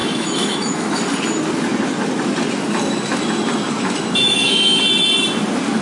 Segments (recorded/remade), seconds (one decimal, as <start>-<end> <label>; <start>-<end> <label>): 0.0-1.0 remade; 1.0-4.2 recorded; 4.2-4.8 remade; 4.8-5.8 recorded